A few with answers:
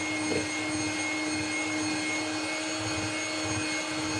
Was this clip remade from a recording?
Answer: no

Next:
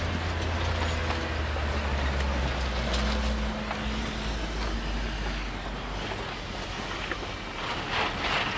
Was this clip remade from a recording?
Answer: no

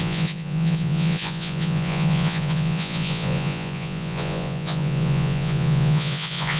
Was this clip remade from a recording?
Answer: yes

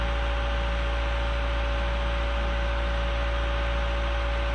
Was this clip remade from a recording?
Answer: no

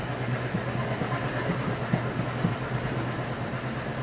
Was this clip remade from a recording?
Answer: no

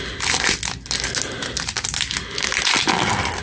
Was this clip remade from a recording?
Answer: no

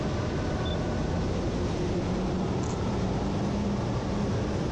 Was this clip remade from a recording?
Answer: no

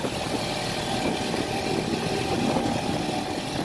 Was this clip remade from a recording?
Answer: no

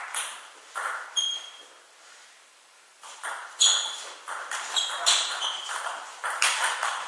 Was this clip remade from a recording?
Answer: yes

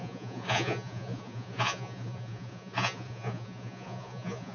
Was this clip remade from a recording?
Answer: yes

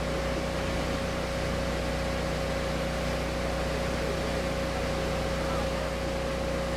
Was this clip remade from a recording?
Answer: no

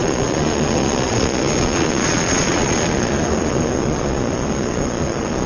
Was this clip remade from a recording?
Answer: yes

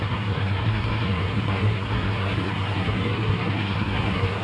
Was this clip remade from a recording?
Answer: yes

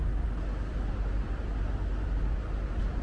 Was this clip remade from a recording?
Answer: no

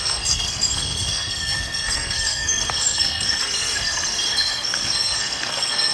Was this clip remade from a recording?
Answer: yes